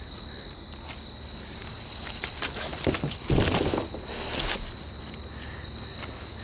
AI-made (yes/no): no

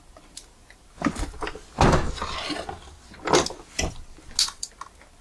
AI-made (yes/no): no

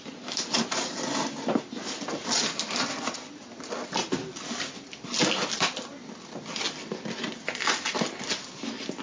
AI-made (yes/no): no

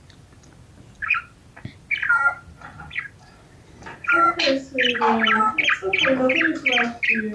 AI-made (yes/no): no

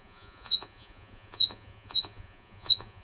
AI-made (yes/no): yes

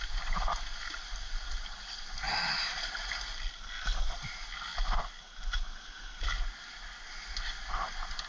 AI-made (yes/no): no